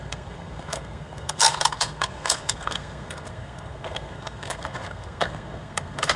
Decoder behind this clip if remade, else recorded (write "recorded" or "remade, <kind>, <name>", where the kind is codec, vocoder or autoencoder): remade, codec, SNAC